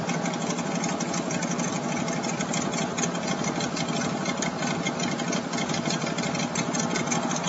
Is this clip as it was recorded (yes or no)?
yes